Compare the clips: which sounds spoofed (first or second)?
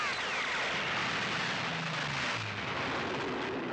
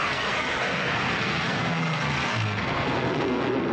second